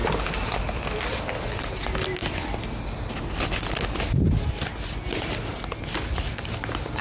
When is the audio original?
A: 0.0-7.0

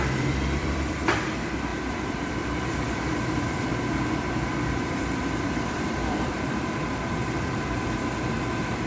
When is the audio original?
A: 3.7-4.3

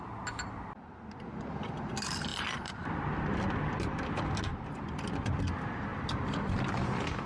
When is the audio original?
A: 0.0-2.3; 3.7-4.5; 5.5-7.3

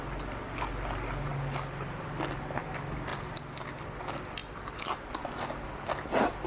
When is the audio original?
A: 0.0-4.4; 5.1-6.5

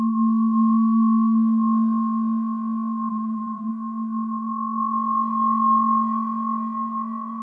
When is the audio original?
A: 0.0-3.1; 3.7-7.4

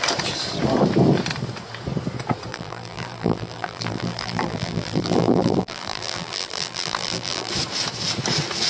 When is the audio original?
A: 0.0-2.5; 7.5-8.7